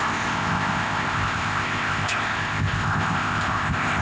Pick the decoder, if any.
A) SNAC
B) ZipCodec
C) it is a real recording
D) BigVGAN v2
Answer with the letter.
B